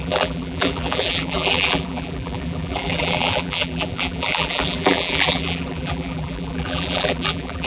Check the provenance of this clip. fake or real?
fake